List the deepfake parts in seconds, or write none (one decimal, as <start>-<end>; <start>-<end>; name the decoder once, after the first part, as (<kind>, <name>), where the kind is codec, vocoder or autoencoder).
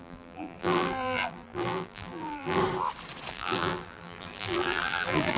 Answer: 0.0-2.6 (vocoder, BigVGAN v2); 3.3-5.4